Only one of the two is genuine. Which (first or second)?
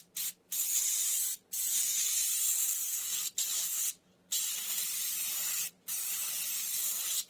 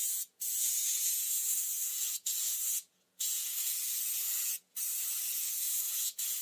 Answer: first